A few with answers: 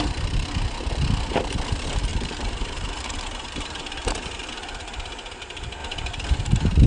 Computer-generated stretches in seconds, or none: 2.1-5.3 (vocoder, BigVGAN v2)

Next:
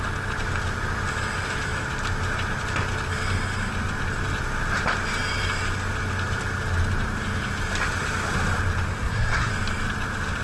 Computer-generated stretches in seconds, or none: 8.9-9.5 (codec, SNAC)

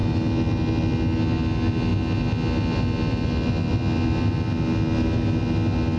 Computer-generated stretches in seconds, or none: none

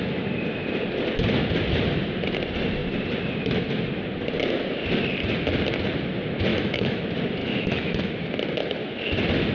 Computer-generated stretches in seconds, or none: 6.5-7.0 (autoencoder, DAC-VAE); 7.4-8.1

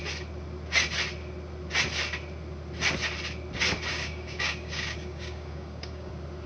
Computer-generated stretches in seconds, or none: 3.9-6.1 (codec, DAC)

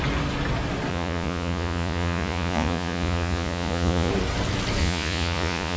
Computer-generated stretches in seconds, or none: 0.9-4.1 (vocoder, Vocos); 4.8-5.8

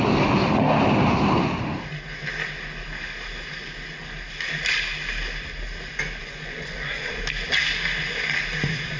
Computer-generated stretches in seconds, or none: 6.2-7.2 (vocoder, Vocos)

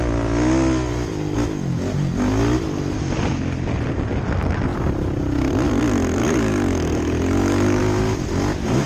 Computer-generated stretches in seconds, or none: 6.2-7.8 (codec, DAC)